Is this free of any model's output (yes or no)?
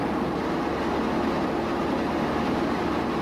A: yes